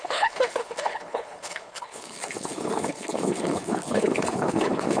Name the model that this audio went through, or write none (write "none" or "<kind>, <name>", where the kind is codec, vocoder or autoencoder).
codec, HILCodec